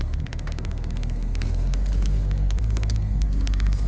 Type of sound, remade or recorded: remade